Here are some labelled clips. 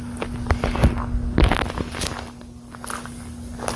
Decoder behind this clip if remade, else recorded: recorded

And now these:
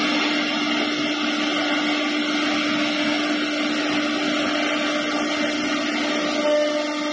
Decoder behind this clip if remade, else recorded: recorded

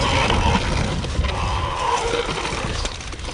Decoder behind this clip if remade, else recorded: recorded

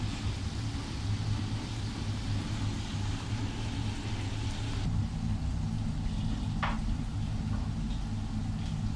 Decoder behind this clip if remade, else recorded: recorded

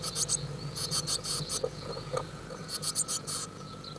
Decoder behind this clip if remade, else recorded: remade, vocoder, Vocos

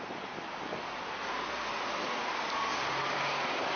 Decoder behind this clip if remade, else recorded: recorded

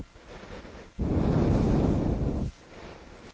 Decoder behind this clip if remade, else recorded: recorded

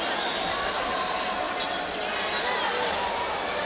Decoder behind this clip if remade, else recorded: recorded